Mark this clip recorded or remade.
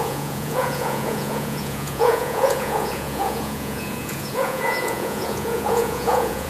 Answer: remade